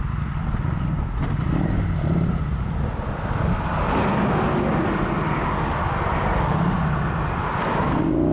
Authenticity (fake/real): real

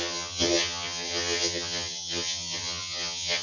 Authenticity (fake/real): fake